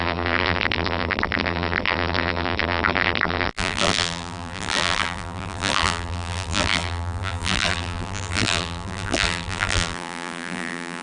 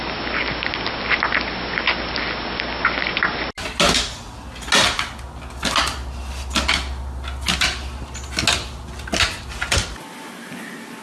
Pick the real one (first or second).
second